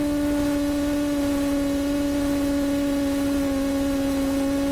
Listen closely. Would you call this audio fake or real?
real